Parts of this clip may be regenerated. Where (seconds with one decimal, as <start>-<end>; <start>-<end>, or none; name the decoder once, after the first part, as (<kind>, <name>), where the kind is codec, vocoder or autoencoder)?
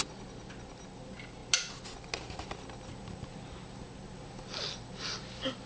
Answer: none